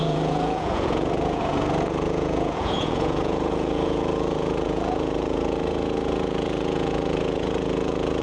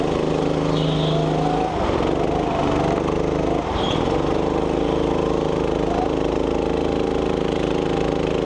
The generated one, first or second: first